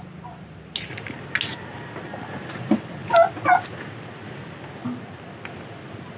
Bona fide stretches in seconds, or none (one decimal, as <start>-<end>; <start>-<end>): 0.0-6.2

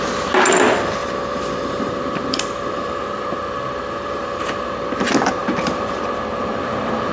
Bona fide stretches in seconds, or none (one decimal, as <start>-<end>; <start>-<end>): 0.0-1.0; 4.8-5.4

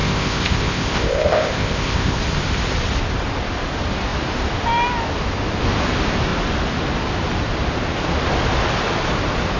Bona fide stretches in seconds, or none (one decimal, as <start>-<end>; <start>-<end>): 2.2-9.6

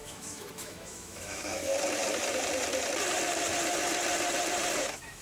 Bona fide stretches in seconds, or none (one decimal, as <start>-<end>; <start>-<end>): 1.7-4.8

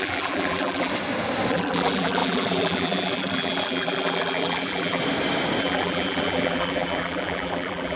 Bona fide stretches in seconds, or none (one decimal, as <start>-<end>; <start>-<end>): 0.9-1.5; 5.0-5.6

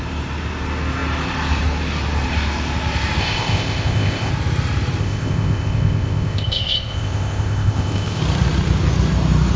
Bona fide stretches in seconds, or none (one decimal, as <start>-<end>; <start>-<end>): 0.0-3.2; 4.3-5.0; 8.2-9.6

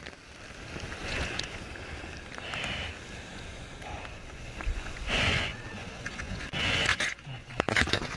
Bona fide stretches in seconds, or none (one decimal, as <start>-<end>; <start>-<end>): 0.0-1.0; 1.7-3.3

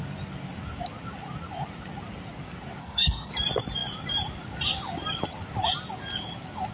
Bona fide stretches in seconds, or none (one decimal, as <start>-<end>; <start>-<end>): 0.0-2.8; 3.3-6.7